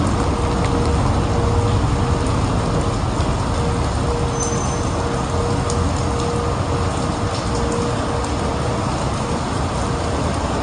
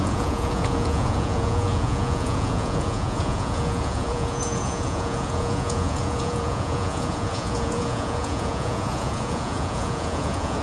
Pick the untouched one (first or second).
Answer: first